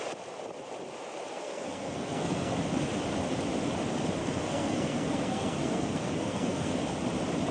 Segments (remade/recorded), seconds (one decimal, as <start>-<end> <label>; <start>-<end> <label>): 0.0-1.3 recorded; 1.3-2.5 remade; 2.5-4.2 recorded; 4.2-6.8 remade; 6.8-7.5 recorded